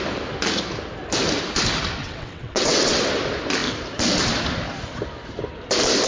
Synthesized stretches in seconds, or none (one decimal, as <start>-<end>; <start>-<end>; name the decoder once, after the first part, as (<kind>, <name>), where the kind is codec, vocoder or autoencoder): 2.0-3.0 (vocoder, WaveNeXt)